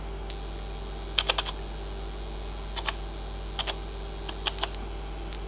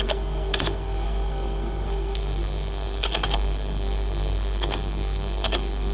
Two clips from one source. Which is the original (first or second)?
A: first